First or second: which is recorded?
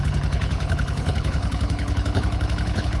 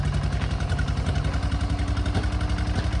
second